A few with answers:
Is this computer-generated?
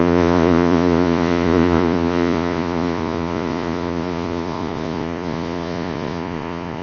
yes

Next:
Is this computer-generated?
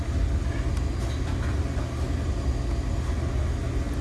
no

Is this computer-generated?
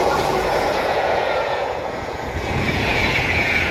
yes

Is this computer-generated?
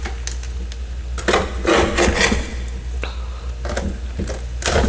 no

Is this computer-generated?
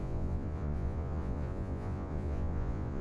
yes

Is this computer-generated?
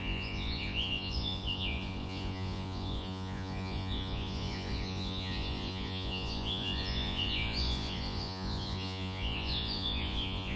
yes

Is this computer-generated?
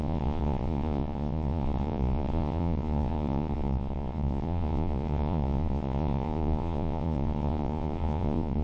yes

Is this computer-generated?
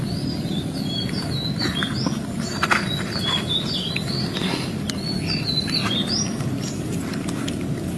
no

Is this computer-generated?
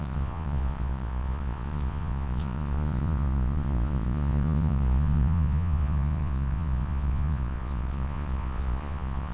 yes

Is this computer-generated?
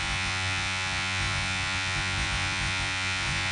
yes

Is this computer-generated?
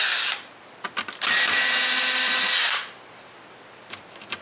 no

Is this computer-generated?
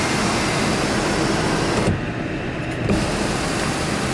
no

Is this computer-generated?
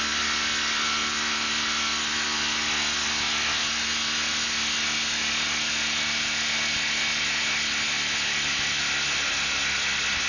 no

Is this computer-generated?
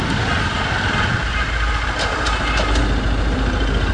no